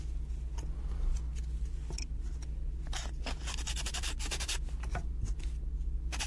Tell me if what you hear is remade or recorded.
recorded